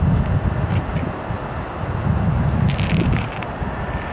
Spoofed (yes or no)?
no